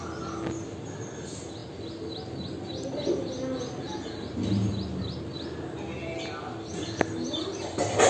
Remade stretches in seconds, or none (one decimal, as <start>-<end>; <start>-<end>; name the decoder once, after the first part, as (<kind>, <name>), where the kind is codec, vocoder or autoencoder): none